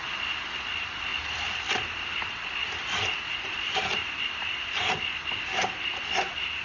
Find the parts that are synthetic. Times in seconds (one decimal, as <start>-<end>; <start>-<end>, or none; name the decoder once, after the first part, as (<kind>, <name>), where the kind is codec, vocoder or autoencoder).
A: none